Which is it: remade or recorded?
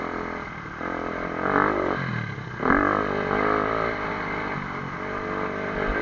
recorded